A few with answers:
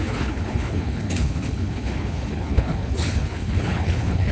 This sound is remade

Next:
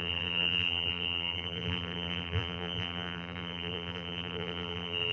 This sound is remade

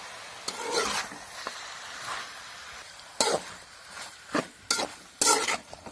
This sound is recorded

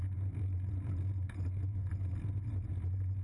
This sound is recorded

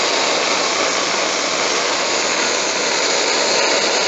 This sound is recorded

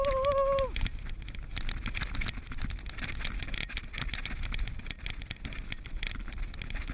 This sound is recorded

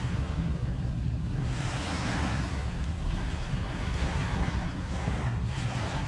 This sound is remade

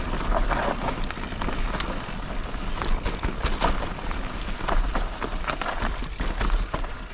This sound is recorded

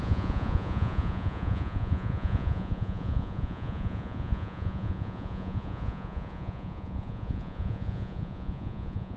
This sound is remade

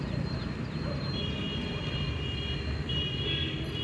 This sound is recorded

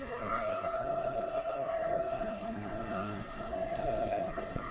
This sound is remade